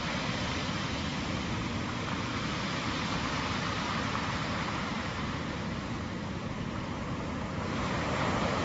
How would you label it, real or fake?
fake